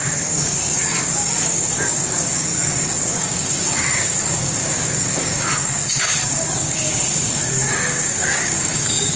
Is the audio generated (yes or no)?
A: yes